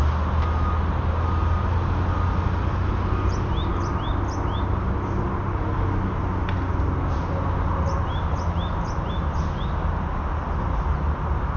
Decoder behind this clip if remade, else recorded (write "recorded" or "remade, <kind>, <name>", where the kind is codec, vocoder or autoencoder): recorded